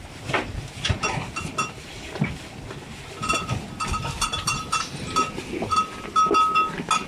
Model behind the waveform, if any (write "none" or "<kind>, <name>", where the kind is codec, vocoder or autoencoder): none